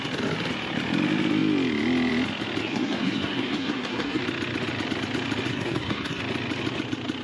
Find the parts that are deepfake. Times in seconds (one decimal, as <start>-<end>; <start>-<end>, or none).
2.6-4.2; 5.5-6.2